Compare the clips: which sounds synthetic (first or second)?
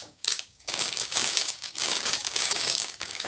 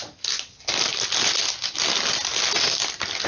first